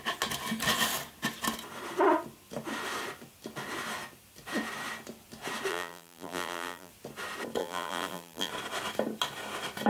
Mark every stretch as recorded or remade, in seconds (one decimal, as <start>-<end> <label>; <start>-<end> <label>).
0.0-5.7 recorded; 5.7-6.9 remade; 6.9-7.6 recorded; 7.6-8.5 remade; 8.5-9.9 recorded